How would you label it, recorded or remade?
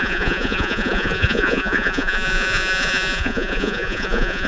remade